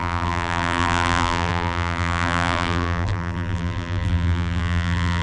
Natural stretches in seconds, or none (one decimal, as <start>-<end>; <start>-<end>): none